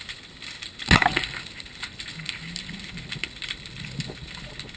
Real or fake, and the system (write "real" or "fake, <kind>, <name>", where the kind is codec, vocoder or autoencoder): real